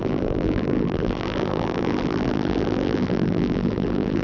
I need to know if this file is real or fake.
fake